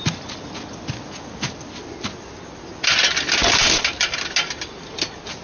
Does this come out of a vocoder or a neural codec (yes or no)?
no